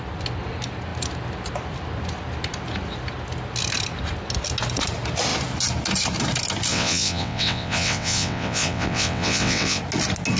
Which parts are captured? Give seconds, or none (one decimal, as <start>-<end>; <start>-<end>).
0.0-6.7; 9.8-10.4